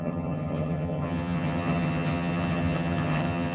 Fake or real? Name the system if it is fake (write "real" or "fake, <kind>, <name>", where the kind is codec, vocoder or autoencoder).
fake, vocoder, HiFi-GAN